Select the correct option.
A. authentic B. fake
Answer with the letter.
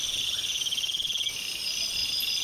A